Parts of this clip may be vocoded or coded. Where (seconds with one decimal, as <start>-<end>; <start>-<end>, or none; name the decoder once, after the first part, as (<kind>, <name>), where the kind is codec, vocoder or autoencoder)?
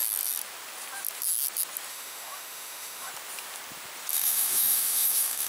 1.9-3.1 (autoencoder, DAC-VAE); 4.1-5.5